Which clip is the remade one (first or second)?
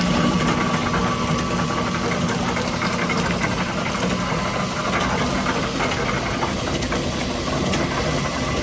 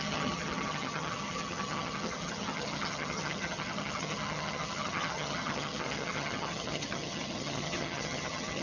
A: second